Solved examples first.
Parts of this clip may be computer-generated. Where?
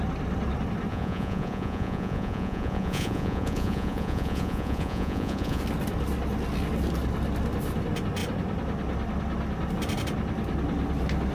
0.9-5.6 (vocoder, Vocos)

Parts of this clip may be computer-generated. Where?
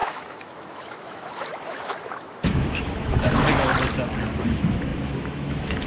0.0-3.7 (autoencoder, DAC-VAE); 4.4-5.9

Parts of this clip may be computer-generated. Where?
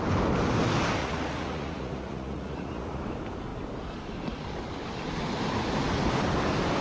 1.0-3.0 (vocoder, Vocos)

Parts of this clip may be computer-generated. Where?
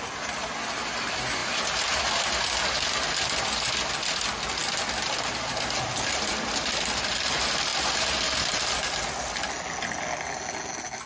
none